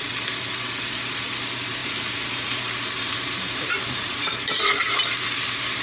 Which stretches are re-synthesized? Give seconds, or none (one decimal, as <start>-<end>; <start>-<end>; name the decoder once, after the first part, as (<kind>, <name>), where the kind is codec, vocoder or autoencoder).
1.8-4.6 (vocoder, BigVGAN v2)